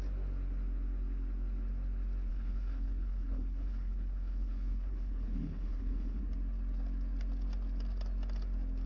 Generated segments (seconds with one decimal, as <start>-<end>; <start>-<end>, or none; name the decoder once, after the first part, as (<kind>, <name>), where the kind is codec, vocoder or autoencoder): 2.3-6.2 (codec, HILCodec)